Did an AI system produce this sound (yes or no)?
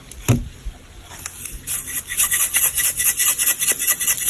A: no